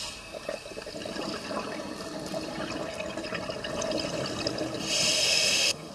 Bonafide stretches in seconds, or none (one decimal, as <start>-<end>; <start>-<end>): 0.0-5.1